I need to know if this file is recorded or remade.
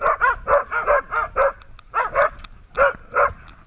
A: recorded